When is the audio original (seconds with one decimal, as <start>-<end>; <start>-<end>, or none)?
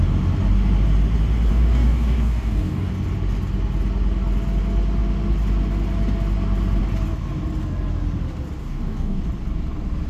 0.0-1.5; 2.9-8.6; 9.2-10.1